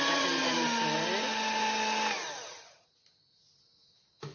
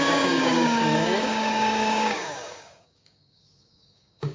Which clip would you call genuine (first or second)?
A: first